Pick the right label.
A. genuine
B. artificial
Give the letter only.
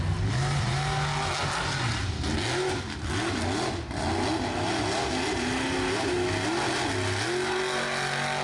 A